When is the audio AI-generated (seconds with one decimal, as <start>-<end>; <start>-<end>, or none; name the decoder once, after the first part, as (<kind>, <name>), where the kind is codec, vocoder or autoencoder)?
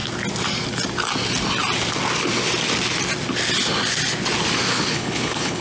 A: 4.7-5.6 (codec, HILCodec)